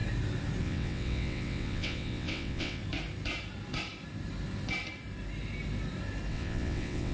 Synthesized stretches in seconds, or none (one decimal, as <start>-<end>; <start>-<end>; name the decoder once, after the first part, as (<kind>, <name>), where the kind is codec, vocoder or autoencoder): 0.6-2.8 (vocoder, WaveNeXt); 6.3-7.1